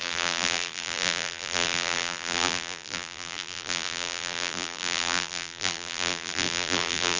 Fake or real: fake